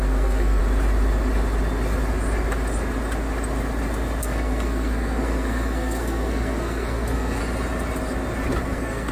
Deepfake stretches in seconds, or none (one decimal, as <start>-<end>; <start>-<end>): 0.0-0.6; 4.2-7.4; 8.6-9.1